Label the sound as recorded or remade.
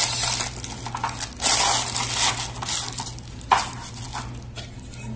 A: recorded